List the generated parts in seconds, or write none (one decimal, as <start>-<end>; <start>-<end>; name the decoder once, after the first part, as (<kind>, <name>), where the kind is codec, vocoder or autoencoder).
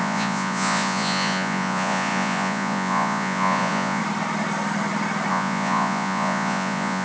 0.0-4.0 (vocoder, Vocos); 5.3-7.0